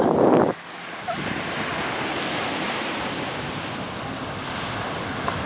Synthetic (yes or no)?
no